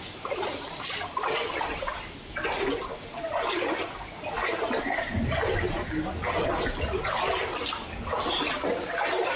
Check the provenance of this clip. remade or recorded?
recorded